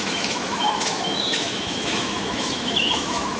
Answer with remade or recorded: remade